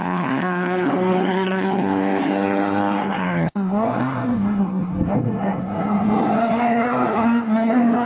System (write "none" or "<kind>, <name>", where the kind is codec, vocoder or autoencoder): codec, SNAC